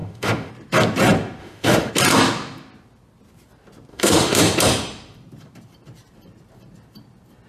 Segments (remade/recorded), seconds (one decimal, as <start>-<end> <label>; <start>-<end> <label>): 0.0-0.5 remade; 0.5-1.4 recorded; 1.4-1.9 remade; 1.9-3.9 recorded; 3.9-4.4 remade; 4.4-7.5 recorded